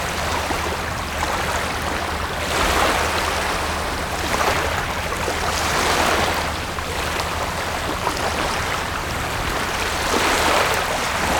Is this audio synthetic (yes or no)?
no